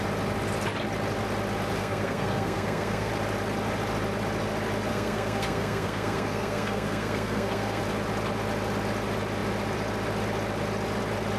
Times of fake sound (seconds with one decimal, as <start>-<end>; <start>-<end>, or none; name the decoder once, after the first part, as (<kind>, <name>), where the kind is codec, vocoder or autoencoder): 1.8-3.1 (codec, SNAC); 4.9-7.8